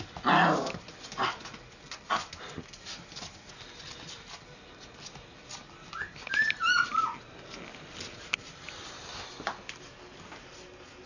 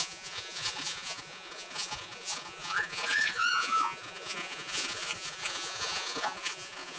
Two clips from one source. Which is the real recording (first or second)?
first